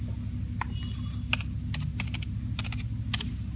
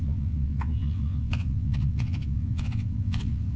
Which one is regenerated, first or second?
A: second